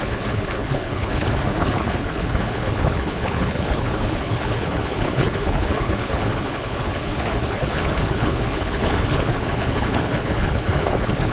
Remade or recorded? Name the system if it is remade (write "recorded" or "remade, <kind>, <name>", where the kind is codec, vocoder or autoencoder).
remade, codec, HILCodec